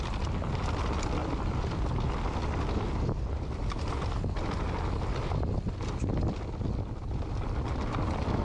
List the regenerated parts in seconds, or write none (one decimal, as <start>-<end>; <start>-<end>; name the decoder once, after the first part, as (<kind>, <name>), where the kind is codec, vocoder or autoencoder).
none